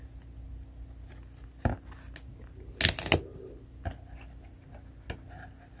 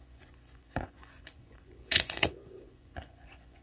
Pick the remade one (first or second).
second